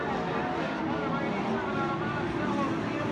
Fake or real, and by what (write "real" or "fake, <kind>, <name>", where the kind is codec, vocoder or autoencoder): real